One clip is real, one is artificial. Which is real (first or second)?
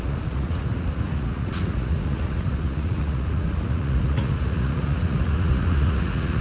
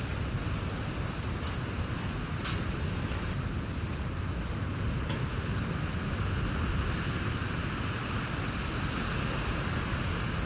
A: second